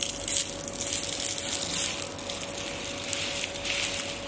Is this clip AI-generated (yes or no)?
no